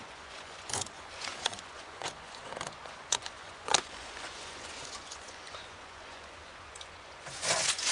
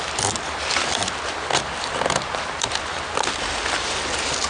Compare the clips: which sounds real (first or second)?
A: second